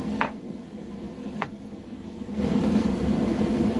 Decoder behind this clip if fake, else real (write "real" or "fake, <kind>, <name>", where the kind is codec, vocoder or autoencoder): fake, codec, SNAC